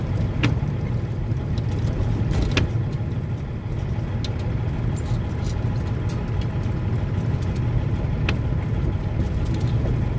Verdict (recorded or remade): recorded